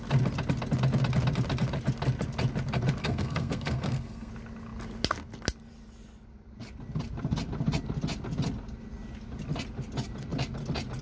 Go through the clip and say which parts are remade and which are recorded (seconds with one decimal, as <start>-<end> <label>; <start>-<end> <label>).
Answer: 0.0-3.0 recorded; 3.0-4.3 remade; 4.3-11.0 recorded